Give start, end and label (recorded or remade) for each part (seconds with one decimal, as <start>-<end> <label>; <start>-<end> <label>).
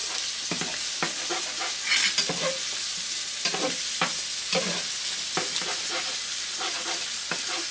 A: 0.0-7.7 recorded